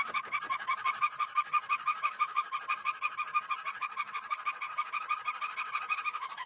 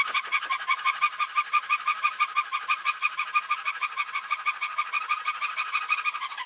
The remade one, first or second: first